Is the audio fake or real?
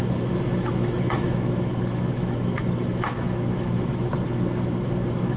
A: fake